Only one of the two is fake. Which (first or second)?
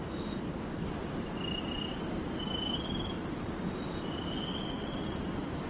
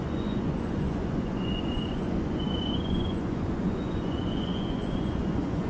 second